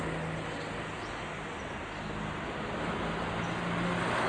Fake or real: real